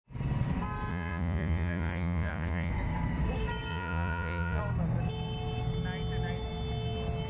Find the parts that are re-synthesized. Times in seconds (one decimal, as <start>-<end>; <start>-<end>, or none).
0.9-2.7; 3.7-4.6